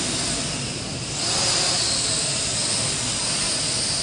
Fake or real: real